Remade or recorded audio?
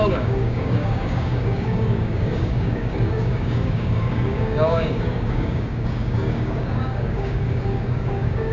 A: remade